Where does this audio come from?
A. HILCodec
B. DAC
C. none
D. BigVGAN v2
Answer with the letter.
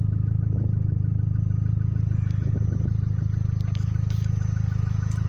C